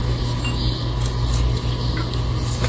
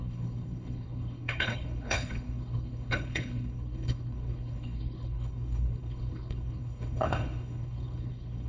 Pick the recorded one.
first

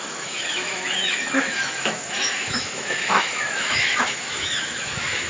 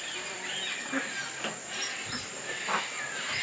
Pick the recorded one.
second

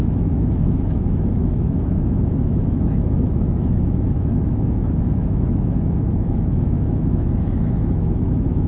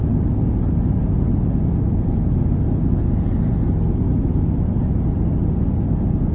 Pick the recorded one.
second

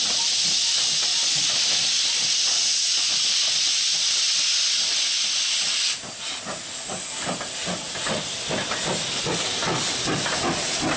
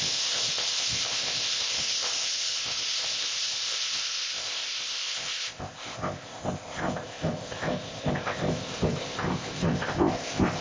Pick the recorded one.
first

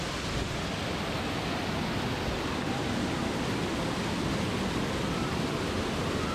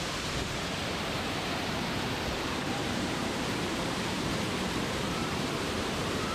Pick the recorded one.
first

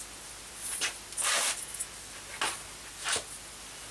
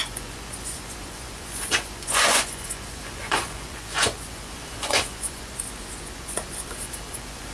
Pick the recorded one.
first